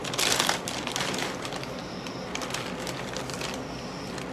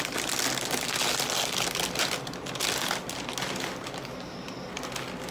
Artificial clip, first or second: first